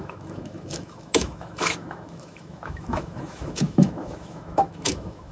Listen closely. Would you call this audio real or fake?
fake